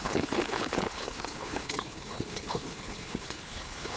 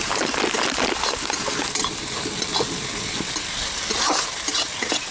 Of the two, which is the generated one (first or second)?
first